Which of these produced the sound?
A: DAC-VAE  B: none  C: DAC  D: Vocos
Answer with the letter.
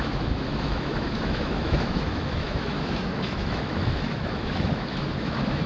A